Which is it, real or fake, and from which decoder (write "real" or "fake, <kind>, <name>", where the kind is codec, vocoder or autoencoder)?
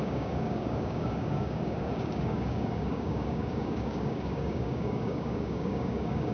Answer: fake, codec, DAC